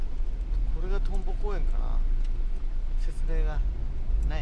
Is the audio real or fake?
real